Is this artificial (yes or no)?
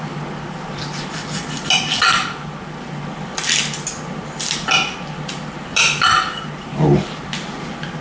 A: no